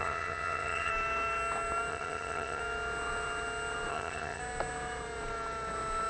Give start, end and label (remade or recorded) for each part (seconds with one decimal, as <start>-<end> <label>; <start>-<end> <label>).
0.0-0.9 remade; 0.9-1.9 recorded; 1.9-2.6 remade; 2.6-3.9 recorded; 3.9-4.4 remade; 4.4-6.1 recorded